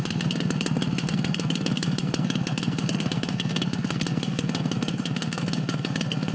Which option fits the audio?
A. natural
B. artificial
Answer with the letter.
B